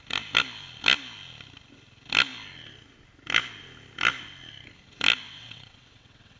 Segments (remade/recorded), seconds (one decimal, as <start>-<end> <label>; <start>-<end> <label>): 0.0-5.2 recorded; 5.2-6.4 remade